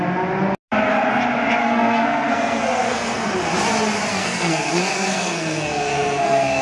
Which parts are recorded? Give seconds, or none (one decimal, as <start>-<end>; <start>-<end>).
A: 0.0-1.6; 3.3-4.1